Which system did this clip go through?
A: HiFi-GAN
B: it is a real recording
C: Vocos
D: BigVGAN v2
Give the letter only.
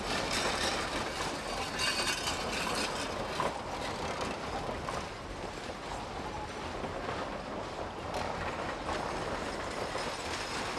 B